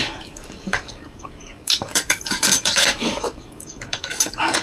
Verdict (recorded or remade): remade